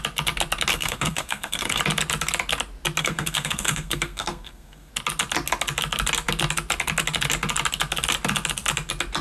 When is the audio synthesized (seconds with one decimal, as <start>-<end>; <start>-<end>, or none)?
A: 0.7-1.8; 3.0-4.9